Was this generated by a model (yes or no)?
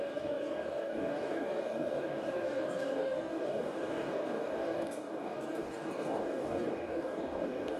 yes